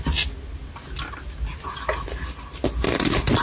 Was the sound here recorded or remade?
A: recorded